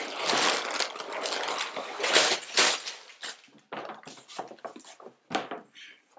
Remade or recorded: recorded